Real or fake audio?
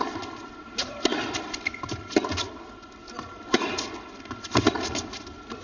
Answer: real